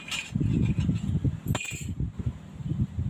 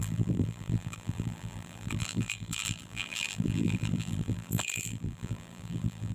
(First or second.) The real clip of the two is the first